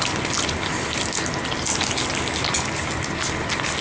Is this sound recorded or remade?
recorded